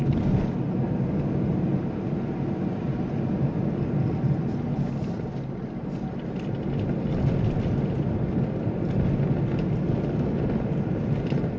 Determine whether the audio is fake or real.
real